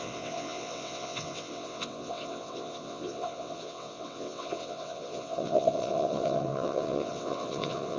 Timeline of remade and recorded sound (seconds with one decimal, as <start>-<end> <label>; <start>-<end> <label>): 0.0-8.0 remade